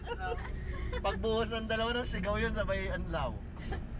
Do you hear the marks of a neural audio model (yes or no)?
no